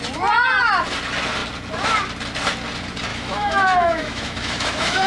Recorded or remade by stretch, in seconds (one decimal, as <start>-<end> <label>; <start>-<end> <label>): 0.0-3.1 recorded; 3.1-5.1 remade